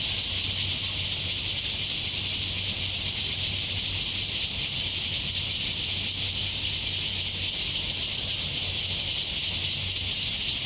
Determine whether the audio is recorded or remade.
recorded